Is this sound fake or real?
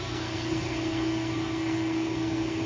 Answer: fake